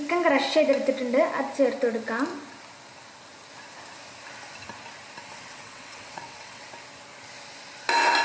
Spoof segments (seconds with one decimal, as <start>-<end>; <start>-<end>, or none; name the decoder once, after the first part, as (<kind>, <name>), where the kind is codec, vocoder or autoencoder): 5.3-6.7 (vocoder, WaveNeXt)